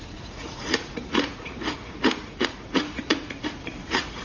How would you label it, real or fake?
fake